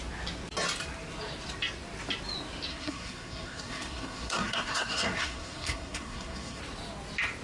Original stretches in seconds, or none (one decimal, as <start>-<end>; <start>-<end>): 0.0-2.7; 6.6-7.4